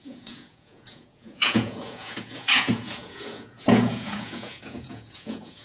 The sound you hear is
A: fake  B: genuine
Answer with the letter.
A